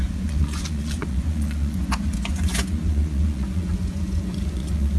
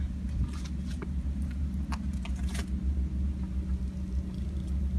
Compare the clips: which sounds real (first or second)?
second